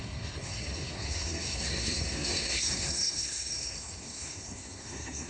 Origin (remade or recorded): remade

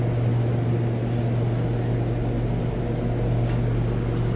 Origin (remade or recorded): recorded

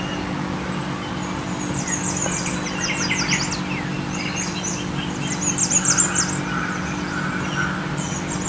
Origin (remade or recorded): recorded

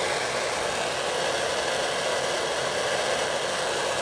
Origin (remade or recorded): recorded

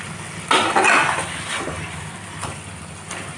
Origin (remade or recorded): recorded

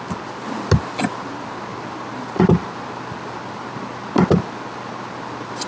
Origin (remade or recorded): recorded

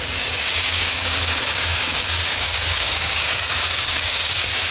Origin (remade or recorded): remade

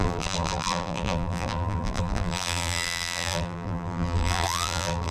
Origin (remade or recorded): remade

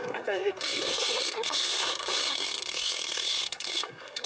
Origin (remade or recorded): remade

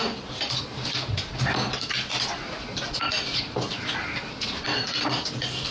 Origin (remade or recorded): recorded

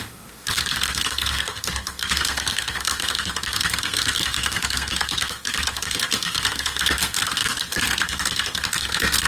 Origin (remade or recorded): remade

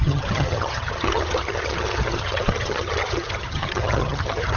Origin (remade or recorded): remade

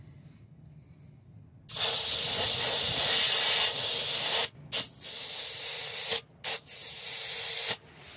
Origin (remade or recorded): recorded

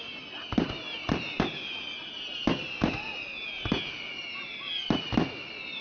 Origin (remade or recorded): recorded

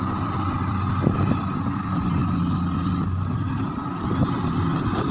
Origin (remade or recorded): recorded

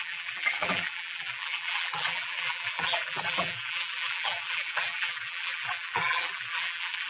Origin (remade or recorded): remade